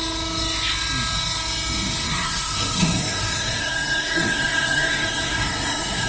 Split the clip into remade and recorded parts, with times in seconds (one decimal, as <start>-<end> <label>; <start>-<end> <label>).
0.0-2.0 recorded; 2.0-6.1 remade